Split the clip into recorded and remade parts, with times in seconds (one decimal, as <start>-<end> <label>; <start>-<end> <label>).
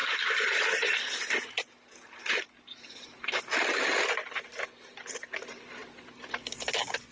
0.0-4.1 remade; 4.1-7.1 recorded